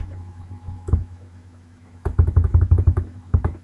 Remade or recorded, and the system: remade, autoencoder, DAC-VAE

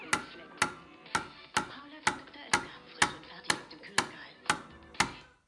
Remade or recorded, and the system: recorded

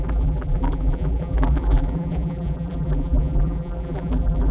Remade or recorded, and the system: remade, vocoder, BigVGAN v2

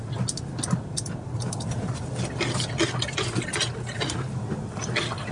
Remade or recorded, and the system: recorded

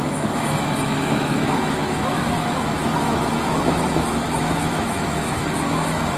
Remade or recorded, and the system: remade, autoencoder, DAC-VAE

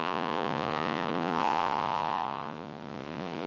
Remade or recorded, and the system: remade, vocoder, Vocos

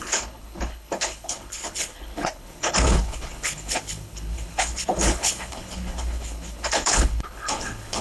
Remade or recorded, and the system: remade, codec, HILCodec